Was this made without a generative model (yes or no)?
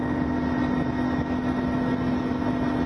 yes